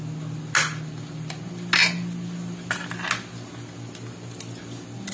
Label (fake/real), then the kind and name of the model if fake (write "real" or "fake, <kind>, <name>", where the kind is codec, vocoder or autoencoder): real